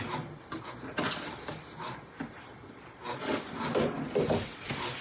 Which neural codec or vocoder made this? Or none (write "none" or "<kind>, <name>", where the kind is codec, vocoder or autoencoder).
none